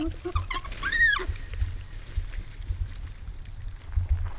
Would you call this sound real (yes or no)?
yes